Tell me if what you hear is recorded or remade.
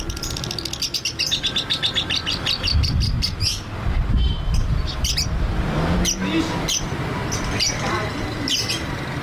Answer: recorded